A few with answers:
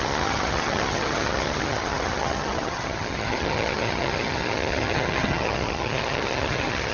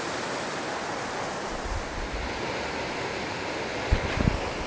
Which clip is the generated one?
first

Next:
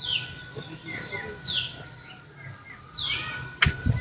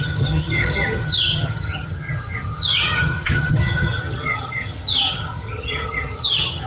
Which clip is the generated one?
second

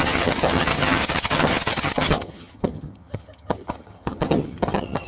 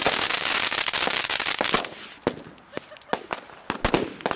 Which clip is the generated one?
first